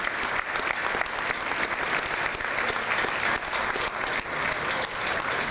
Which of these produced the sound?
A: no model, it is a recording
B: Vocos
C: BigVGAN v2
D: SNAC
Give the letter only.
A